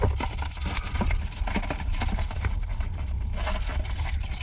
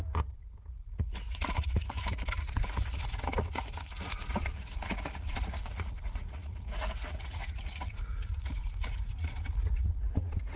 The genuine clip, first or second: first